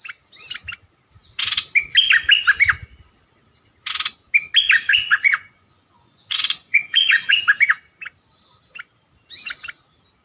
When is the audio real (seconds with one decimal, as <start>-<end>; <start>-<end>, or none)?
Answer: 0.0-4.9; 7.4-10.2

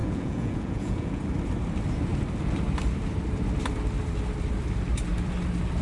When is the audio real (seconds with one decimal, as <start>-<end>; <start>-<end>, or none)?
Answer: 1.2-5.8

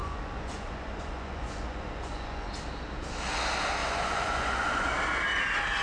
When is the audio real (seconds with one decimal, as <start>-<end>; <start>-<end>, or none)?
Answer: 2.5-3.8; 4.9-5.8

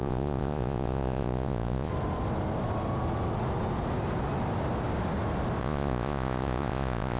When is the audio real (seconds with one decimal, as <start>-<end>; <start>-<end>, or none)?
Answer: 1.9-5.6

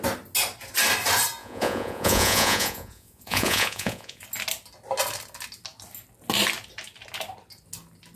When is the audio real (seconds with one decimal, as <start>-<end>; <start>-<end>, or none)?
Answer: 0.0-1.4; 4.2-8.2

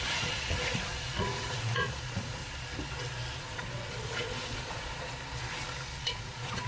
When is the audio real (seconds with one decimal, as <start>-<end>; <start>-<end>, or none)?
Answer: 2.4-3.4; 5.1-6.0